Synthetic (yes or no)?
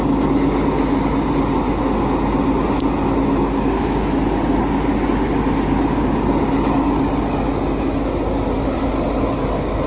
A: no